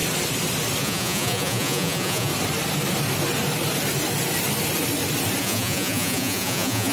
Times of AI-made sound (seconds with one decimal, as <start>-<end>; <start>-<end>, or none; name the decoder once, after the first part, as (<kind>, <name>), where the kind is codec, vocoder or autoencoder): 0.8-2.3 (vocoder, Vocos); 5.4-6.9

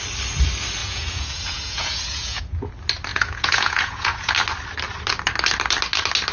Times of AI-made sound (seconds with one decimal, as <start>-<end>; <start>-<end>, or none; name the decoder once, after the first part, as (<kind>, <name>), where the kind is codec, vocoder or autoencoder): 0.8-2.7 (vocoder, Vocos); 3.1-4.3

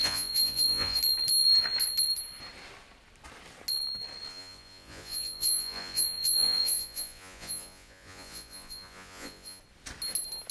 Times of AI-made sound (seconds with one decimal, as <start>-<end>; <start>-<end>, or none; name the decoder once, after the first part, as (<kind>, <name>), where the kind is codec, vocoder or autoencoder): 0.0-1.0 (vocoder, Vocos); 4.3-9.6

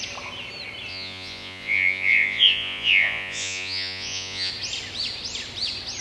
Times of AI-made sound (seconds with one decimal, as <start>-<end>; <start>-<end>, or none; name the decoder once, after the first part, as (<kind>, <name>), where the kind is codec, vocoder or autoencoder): 0.9-4.5 (vocoder, Vocos)

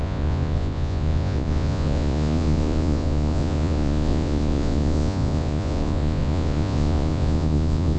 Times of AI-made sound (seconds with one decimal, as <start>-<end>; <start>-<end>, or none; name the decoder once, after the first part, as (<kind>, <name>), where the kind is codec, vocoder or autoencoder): 0.0-8.0 (vocoder, Vocos)

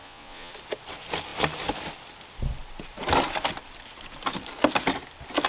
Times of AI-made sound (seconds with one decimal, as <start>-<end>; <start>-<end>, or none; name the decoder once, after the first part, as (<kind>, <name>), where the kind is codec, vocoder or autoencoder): 0.0-0.5 (vocoder, Vocos)

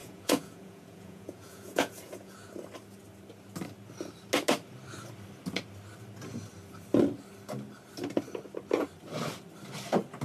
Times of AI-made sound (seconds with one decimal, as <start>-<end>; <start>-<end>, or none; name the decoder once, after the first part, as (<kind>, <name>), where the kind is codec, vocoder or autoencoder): 0.0-2.5 (vocoder, Vocos)